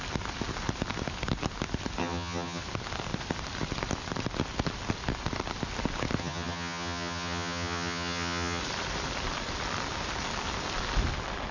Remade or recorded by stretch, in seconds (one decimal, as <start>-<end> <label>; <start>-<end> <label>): 0.0-2.0 recorded; 2.0-2.6 remade; 2.6-6.2 recorded; 6.2-8.6 remade; 8.6-11.5 recorded